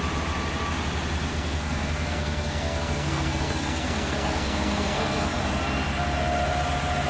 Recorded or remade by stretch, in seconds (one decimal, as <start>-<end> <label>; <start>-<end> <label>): 0.0-1.3 recorded; 1.3-5.4 remade; 5.4-7.1 recorded